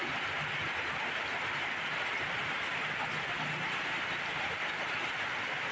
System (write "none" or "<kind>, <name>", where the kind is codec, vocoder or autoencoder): none